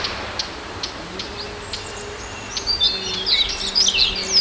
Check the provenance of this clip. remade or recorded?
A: recorded